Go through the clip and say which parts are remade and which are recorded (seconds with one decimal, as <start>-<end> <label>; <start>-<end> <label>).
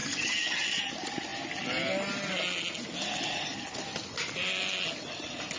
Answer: 0.0-0.9 remade; 0.9-5.6 recorded